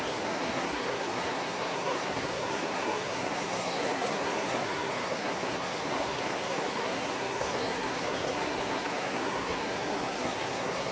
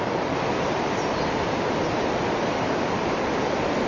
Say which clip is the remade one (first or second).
first